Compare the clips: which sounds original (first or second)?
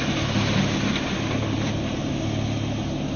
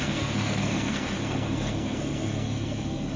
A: first